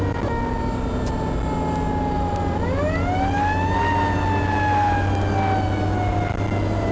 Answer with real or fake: real